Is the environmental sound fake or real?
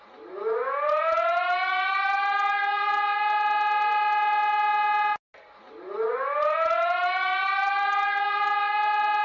real